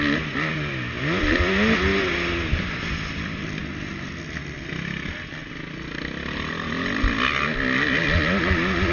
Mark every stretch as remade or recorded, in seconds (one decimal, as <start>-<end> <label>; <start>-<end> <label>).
0.0-8.9 recorded